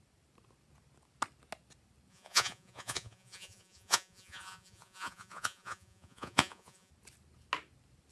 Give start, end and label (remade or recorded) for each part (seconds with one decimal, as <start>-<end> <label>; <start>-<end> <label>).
0.0-2.1 recorded; 2.1-6.9 remade; 6.9-8.1 recorded